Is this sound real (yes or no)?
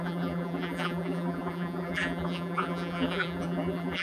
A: no